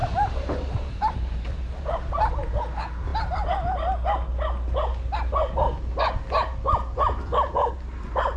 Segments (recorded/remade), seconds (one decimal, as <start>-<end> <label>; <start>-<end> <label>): 0.0-2.1 remade; 2.1-8.4 recorded